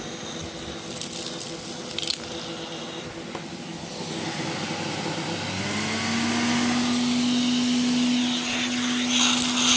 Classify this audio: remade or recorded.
recorded